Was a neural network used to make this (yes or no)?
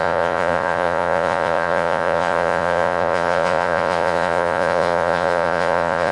yes